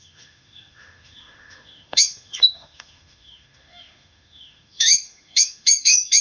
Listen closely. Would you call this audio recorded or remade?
remade